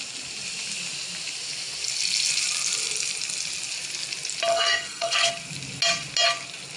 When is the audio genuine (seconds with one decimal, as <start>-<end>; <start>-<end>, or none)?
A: 0.0-4.5; 5.3-6.8